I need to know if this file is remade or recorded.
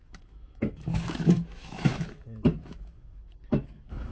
remade